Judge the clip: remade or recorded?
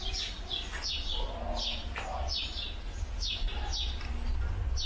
recorded